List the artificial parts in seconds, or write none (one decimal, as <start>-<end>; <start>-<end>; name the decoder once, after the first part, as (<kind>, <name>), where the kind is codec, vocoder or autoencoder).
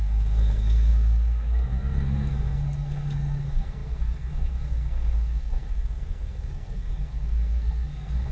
0.0-8.3 (codec, SNAC)